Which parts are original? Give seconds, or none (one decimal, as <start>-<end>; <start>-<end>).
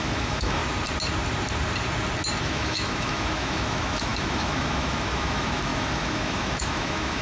0.6-2.4